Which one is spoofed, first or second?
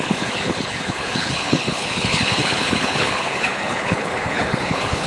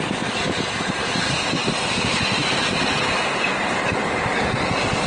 first